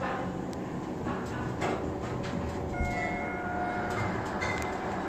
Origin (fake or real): real